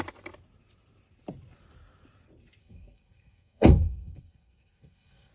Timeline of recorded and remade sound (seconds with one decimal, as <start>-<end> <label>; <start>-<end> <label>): 0.0-2.6 recorded; 2.6-5.3 remade